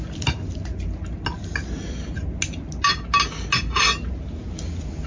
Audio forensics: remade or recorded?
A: recorded